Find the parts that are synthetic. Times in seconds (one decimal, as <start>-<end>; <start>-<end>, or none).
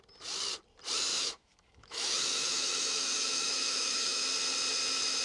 1.1-4.2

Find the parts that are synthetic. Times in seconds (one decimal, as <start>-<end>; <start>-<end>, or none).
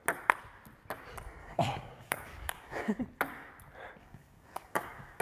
1.4-3.0; 4.0-5.2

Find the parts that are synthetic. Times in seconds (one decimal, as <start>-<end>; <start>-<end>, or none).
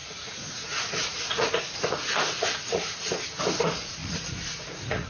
0.0-5.1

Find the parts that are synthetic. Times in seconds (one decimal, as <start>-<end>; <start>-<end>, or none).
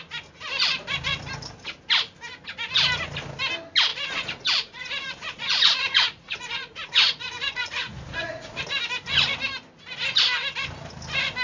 3.9-8.6